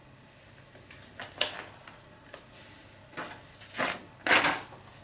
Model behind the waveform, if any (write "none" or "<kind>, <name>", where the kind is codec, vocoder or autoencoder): none